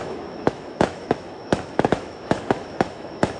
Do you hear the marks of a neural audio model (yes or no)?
yes